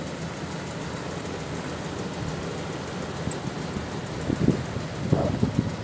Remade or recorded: recorded